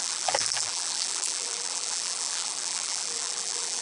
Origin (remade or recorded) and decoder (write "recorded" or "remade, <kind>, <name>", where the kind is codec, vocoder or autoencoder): remade, vocoder, BigVGAN v2